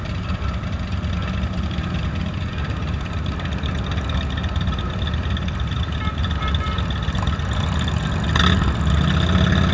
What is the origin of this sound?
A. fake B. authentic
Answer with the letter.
B